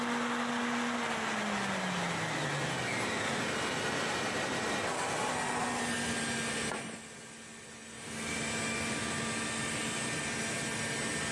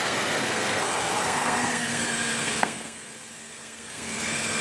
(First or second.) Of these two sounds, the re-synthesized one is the second